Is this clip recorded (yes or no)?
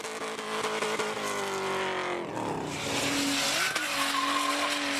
yes